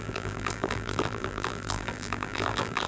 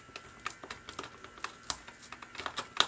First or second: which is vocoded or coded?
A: first